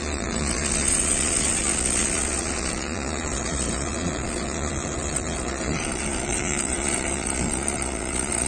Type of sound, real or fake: fake